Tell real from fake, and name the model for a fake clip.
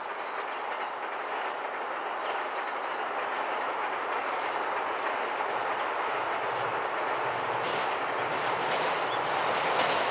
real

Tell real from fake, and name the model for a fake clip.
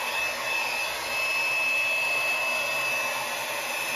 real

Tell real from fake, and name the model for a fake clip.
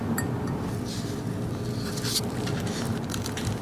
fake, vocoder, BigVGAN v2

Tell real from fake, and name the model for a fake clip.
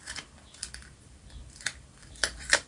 fake, vocoder, BigVGAN v2